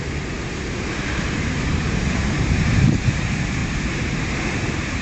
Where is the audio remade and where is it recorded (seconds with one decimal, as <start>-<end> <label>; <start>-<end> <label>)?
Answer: 0.0-3.6 remade; 3.6-4.2 recorded; 4.2-5.0 remade

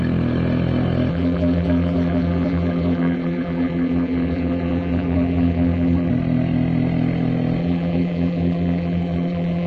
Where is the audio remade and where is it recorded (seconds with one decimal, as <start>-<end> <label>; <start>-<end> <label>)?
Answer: 0.0-1.1 recorded; 1.1-6.1 remade; 6.1-7.6 recorded; 7.6-9.7 remade

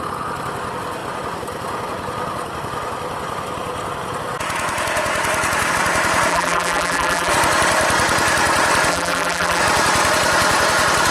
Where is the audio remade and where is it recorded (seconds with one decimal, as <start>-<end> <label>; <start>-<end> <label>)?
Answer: 0.0-6.3 recorded; 6.3-7.3 remade; 7.3-8.9 recorded; 8.9-9.6 remade; 9.6-11.1 recorded

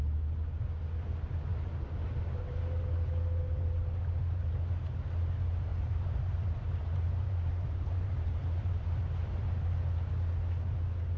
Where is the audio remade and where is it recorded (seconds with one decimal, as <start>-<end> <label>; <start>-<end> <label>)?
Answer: 0.0-1.5 recorded; 1.5-2.6 remade; 2.6-5.7 recorded; 5.7-8.8 remade; 8.8-11.2 recorded

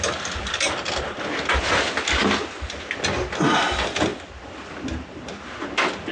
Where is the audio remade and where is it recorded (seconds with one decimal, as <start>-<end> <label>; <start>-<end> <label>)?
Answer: 0.0-6.1 recorded

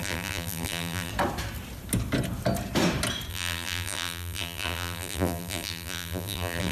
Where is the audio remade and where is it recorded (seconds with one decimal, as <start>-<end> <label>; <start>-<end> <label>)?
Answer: 0.0-1.1 remade; 1.1-3.3 recorded; 3.3-6.7 remade

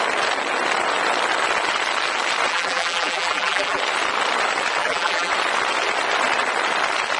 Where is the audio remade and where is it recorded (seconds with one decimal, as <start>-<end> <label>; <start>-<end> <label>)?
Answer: 0.0-2.5 recorded; 2.5-3.8 remade; 3.8-4.8 recorded; 4.8-5.3 remade; 5.3-7.2 recorded